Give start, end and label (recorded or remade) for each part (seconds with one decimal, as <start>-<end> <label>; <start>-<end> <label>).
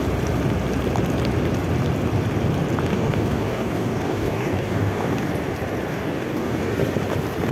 0.0-2.9 recorded; 2.9-5.3 remade; 5.3-5.9 recorded; 5.9-6.7 remade; 6.7-7.5 recorded